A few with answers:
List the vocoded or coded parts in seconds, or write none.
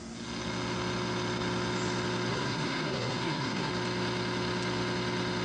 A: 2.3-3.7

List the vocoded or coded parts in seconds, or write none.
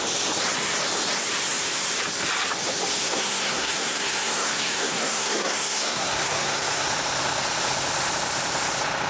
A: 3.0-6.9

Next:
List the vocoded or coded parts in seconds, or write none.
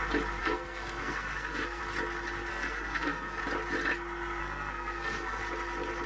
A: 0.4-1.8; 2.5-3.4; 4.4-5.4